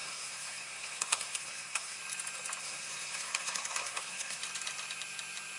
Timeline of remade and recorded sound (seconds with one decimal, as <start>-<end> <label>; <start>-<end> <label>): 0.0-2.0 remade; 2.0-2.6 recorded; 2.6-4.4 remade; 4.4-5.6 recorded